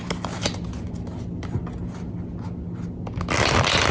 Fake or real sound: real